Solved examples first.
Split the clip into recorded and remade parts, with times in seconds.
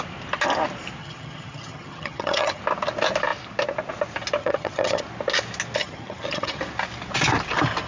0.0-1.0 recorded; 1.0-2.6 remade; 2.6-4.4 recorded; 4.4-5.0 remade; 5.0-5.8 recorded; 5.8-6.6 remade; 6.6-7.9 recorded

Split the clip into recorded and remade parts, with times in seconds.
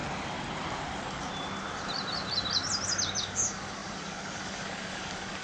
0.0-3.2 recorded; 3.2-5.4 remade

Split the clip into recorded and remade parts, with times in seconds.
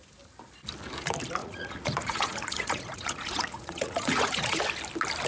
0.0-1.4 recorded; 1.4-4.6 remade; 4.6-5.3 recorded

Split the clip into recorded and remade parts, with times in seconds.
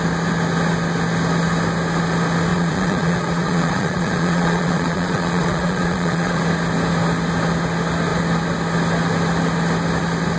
0.0-2.5 recorded; 2.5-6.4 remade; 6.4-10.4 recorded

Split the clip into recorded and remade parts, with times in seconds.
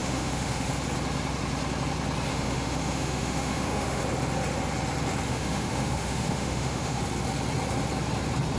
0.0-0.7 remade; 0.7-2.3 recorded; 2.3-4.0 remade; 4.0-5.3 recorded; 5.3-7.0 remade; 7.0-8.6 recorded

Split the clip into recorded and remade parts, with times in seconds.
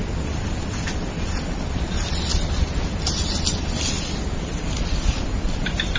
0.0-6.0 recorded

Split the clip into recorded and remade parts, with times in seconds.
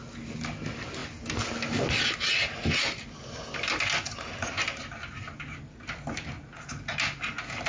0.0-7.7 recorded